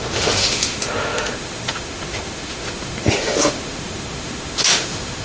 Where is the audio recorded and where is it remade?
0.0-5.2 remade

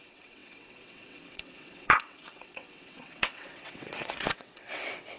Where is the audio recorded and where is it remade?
0.0-5.2 remade

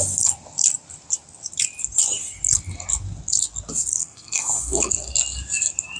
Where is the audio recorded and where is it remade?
0.0-4.0 recorded; 4.0-4.9 remade; 4.9-6.0 recorded

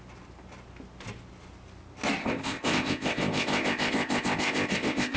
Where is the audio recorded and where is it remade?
0.0-2.2 recorded; 2.2-5.2 remade

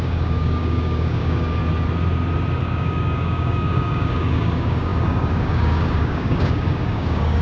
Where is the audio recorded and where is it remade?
0.0-1.6 remade; 1.6-2.6 recorded; 2.6-7.4 remade

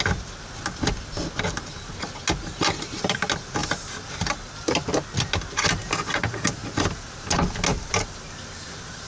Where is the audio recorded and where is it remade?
0.0-9.1 recorded

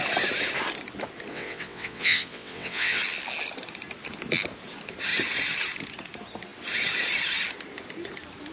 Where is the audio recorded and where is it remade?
0.0-1.3 recorded; 1.3-3.0 remade; 3.0-8.5 recorded

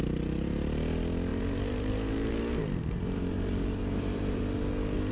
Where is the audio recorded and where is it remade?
0.0-1.3 recorded; 1.3-4.4 remade; 4.4-5.1 recorded